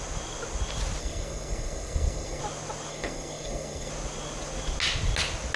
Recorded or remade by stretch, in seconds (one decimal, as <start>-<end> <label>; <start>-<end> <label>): 0.0-1.0 recorded; 1.0-2.4 remade; 2.4-2.9 recorded; 2.9-3.9 remade; 3.9-5.6 recorded